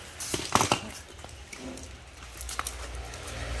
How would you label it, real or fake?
real